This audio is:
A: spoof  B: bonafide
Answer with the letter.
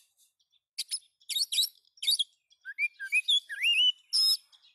B